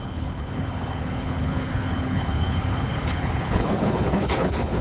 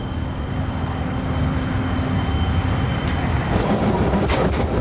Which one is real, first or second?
second